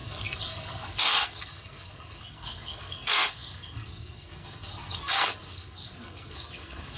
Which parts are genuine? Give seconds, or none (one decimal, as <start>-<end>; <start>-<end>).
none